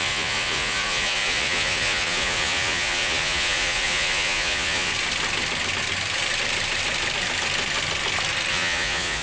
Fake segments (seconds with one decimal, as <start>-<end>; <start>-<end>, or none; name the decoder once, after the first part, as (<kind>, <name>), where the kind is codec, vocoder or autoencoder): 0.0-4.9 (vocoder, Vocos); 8.5-9.2